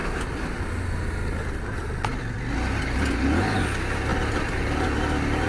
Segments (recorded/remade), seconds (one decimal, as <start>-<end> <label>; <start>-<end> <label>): 0.0-5.5 recorded